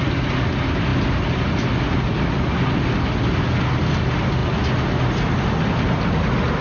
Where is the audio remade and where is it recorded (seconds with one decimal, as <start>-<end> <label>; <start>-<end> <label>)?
0.0-6.6 recorded